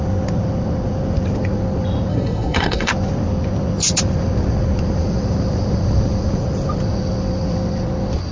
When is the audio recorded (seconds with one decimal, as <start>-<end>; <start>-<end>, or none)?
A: 0.0-2.1; 2.9-8.3